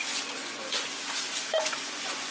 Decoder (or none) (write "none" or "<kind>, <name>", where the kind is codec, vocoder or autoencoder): vocoder, Vocos